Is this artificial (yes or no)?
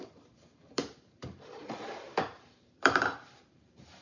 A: yes